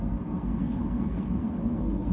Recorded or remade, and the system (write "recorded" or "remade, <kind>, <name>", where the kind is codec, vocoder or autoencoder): remade, codec, SNAC